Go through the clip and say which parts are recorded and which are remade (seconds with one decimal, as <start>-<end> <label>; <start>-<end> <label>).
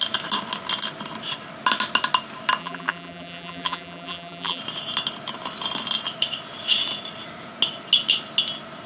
0.0-2.6 recorded; 2.6-4.6 remade; 4.6-8.9 recorded